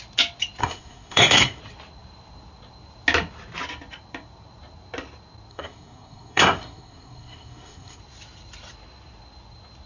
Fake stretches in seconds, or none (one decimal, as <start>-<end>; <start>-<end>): 0.6-1.6; 5.5-8.0